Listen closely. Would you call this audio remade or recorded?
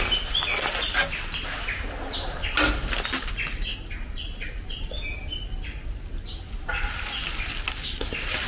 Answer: recorded